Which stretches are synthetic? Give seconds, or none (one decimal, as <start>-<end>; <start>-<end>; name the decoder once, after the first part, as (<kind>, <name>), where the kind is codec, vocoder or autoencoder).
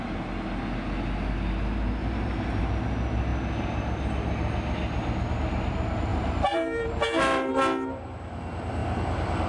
2.0-2.7 (vocoder, BigVGAN v2); 6.1-7.5